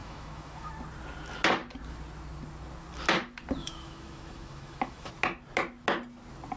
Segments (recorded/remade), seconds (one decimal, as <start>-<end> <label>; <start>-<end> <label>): 0.0-0.7 remade; 0.7-3.6 recorded; 3.6-5.1 remade; 5.1-6.6 recorded